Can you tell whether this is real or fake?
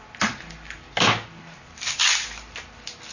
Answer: real